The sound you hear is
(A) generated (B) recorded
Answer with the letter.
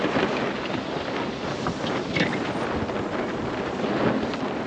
B